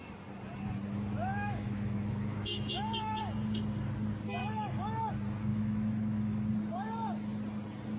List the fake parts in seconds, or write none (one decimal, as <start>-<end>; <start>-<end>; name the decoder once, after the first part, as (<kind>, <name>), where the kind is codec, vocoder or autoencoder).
1.3-3.2 (autoencoder, DAC-VAE); 4.4-5.1; 5.5-6.5